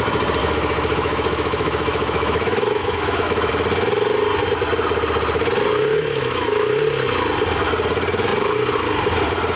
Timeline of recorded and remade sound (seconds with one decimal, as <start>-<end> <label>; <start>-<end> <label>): 0.0-0.4 recorded; 0.4-3.5 remade; 3.5-5.9 recorded; 5.9-6.8 remade; 6.8-9.6 recorded